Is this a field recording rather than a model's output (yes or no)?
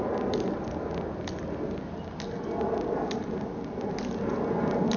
yes